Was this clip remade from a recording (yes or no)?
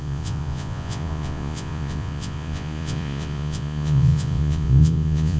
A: yes